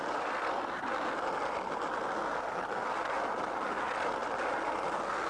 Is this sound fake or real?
real